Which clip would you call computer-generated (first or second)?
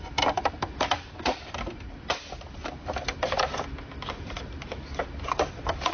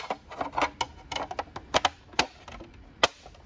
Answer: first